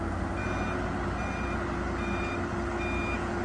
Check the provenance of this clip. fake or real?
real